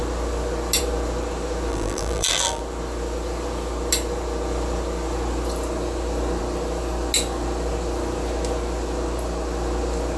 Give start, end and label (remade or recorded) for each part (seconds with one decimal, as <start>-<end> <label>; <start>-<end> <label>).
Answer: 0.0-1.7 recorded; 1.7-2.6 remade; 2.6-10.2 recorded